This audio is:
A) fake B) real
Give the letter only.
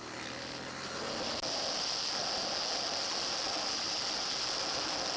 B